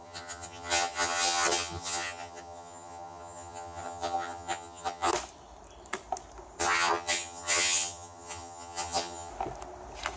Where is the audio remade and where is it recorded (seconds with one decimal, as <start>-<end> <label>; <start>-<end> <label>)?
0.0-5.1 remade; 5.1-6.6 recorded; 6.6-9.3 remade; 9.3-10.2 recorded

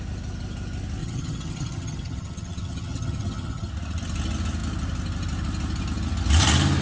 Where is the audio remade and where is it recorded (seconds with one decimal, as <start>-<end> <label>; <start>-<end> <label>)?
0.0-1.0 recorded; 1.0-3.7 remade; 3.7-6.8 recorded

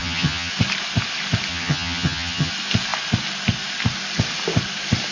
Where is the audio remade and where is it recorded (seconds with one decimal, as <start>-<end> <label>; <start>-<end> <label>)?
0.0-0.5 remade; 0.5-1.5 recorded; 1.5-2.5 remade; 2.5-5.1 recorded

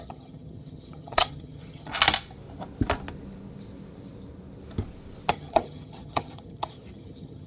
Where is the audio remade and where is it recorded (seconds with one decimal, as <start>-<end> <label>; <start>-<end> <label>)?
0.0-1.9 remade; 1.9-5.3 recorded; 5.3-7.5 remade

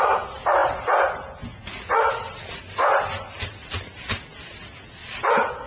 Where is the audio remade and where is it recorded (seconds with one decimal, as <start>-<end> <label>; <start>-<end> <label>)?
0.0-5.7 recorded